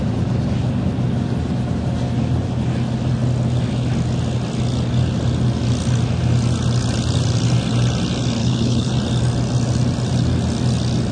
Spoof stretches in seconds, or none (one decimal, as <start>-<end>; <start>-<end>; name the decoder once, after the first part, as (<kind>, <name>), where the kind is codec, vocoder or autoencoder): 8.4-8.9 (codec, HILCodec)

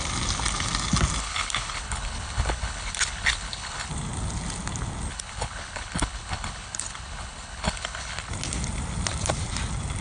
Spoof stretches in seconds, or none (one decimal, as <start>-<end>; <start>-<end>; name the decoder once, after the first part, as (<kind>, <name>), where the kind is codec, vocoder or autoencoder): 1.2-3.9 (codec, HILCodec); 5.1-8.3

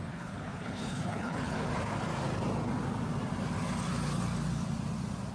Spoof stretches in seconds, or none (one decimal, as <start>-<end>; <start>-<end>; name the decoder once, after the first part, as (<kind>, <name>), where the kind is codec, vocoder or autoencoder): 0.0-1.7 (codec, HILCodec)

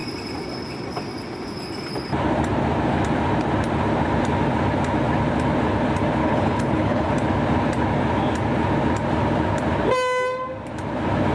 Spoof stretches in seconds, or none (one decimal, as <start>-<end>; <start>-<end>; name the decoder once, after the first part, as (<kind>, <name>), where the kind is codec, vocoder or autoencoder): 6.2-7.1 (codec, HILCodec)

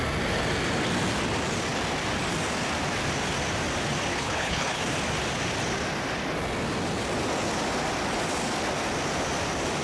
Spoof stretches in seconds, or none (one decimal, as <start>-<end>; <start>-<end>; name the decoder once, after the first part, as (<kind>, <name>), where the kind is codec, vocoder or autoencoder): 4.1-4.8 (codec, HILCodec)

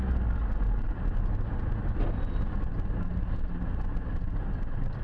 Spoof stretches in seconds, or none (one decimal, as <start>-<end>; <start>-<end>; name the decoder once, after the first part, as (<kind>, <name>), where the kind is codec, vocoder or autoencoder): none

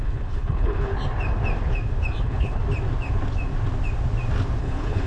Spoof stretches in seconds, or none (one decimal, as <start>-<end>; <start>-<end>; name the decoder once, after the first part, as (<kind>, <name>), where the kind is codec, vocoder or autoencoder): 0.0-0.9 (codec, HILCodec); 2.2-2.6; 4.6-5.1